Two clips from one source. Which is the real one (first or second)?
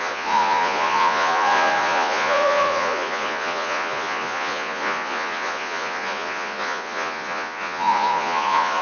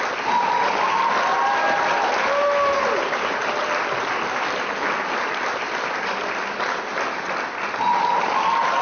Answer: second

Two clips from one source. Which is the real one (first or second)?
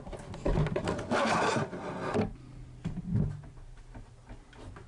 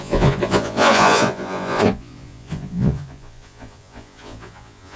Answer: first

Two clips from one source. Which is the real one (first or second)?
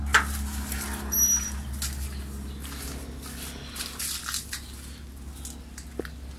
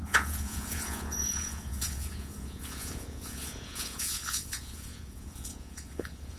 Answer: first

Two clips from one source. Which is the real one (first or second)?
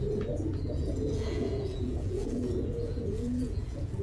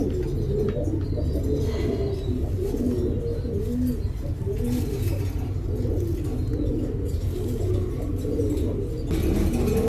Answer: second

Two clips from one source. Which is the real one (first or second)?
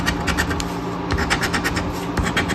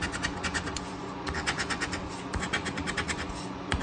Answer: first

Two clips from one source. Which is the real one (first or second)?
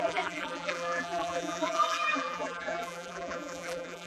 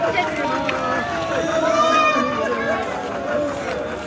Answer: second